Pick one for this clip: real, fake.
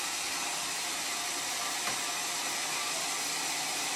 real